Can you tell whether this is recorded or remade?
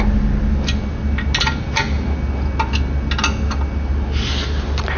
recorded